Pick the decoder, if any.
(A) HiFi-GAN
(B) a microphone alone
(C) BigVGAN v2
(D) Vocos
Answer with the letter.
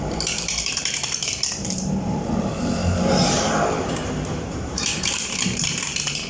C